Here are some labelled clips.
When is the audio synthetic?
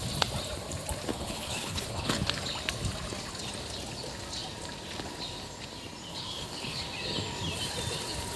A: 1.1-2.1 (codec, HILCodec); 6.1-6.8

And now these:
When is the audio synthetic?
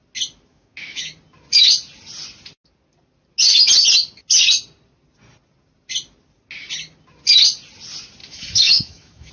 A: 0.5-1.1 (autoencoder, DAC-VAE); 8.2-9.3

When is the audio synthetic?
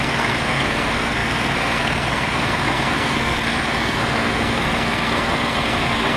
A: 0.0-6.2 (codec, SNAC)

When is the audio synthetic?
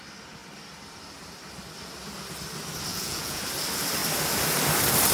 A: 2.9-3.4 (vocoder, Vocos)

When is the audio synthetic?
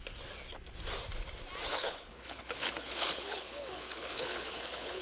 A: 1.7-5.0 (codec, HILCodec)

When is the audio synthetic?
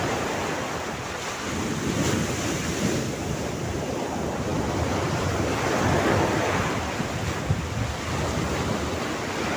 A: none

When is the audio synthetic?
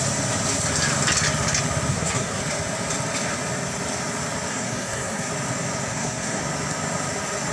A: 1.9-2.4 (codec, SNAC); 4.5-5.3; 5.9-6.4